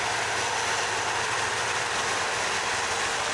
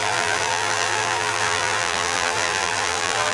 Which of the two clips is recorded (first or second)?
first